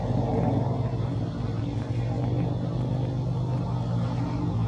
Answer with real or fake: real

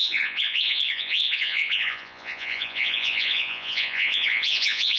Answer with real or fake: fake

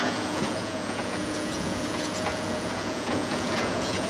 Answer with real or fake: fake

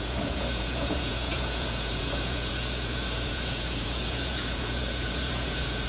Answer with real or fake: fake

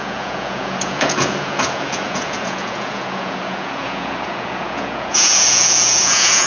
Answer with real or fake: fake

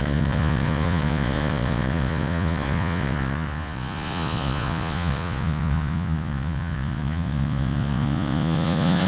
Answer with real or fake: fake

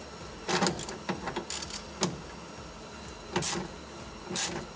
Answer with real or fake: real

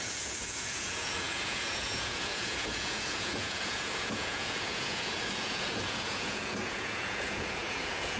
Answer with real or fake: fake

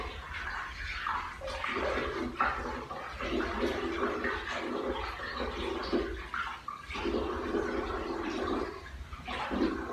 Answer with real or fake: real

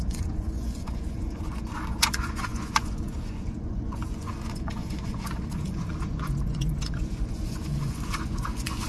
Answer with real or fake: fake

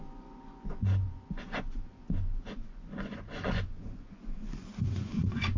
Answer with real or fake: fake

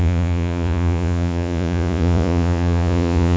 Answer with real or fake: fake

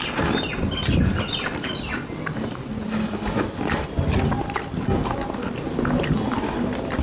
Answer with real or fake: real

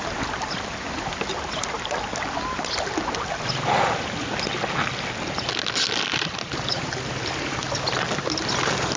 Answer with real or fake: real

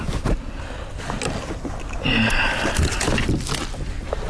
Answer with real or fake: real